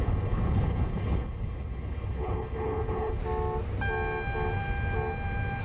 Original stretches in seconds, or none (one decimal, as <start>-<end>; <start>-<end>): 3.2-5.6